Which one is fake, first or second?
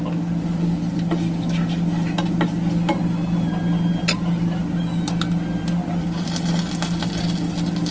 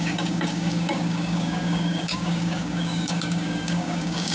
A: second